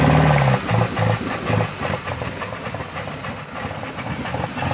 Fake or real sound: real